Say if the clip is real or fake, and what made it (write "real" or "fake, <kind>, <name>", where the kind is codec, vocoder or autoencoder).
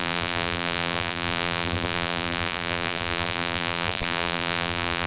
fake, vocoder, BigVGAN v2